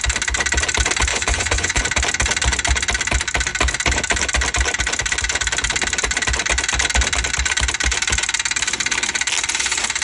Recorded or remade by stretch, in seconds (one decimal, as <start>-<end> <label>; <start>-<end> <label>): 0.0-1.1 recorded; 1.1-1.8 remade; 1.8-10.0 recorded